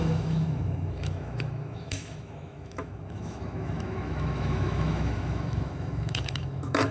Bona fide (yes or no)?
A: no